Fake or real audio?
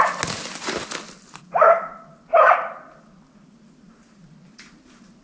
real